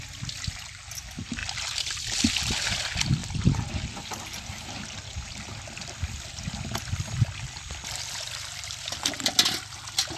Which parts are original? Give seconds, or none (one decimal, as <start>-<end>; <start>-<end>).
0.0-10.2